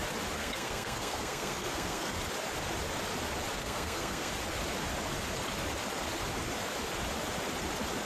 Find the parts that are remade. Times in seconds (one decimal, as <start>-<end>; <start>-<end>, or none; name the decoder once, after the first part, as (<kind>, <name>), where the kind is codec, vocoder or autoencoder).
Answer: 0.4-2.2 (codec, SNAC); 3.6-4.3